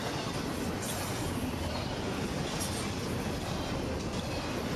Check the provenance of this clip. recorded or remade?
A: recorded